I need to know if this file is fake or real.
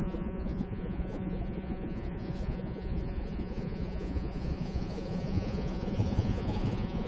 fake